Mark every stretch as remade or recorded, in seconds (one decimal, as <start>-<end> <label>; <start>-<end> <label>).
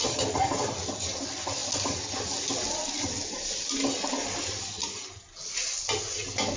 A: 0.0-6.6 recorded